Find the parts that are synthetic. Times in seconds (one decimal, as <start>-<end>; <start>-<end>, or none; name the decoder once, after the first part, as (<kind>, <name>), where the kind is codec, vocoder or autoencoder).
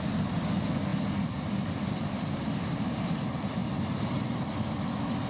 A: none